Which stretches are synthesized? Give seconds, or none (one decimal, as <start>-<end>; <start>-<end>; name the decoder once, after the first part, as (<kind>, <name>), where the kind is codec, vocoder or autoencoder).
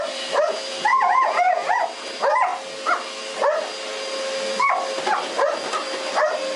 0.9-1.7 (vocoder, Vocos)